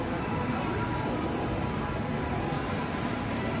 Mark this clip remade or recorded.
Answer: recorded